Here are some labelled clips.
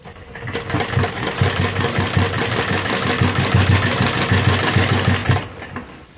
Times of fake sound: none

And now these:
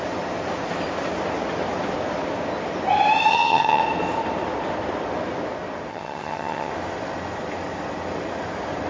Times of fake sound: 3.3-3.8 (vocoder, HiFi-GAN); 5.9-6.7

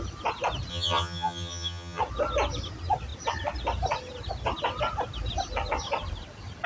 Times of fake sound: 0.7-2.0 (vocoder, HiFi-GAN)

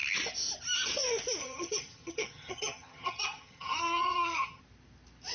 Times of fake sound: 1.4-4.6 (vocoder, HiFi-GAN)

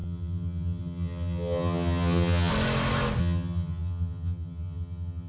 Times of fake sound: 0.0-2.5 (vocoder, HiFi-GAN); 3.2-5.3

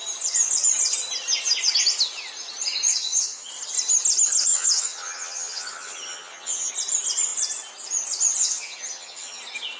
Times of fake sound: 2.9-3.5 (vocoder, HiFi-GAN); 4.5-6.7; 8.4-9.4